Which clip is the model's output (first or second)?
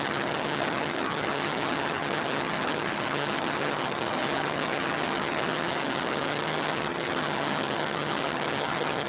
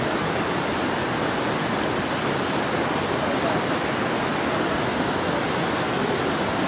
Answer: first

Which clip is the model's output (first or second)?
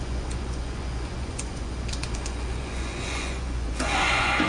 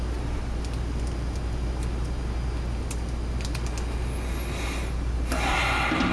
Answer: first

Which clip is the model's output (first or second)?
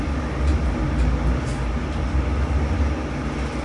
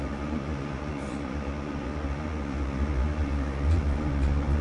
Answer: second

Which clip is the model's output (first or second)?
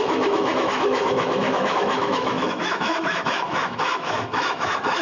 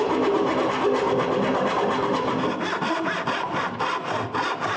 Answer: first